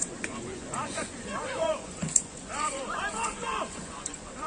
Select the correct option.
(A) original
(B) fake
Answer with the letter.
B